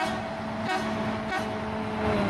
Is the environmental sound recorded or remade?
recorded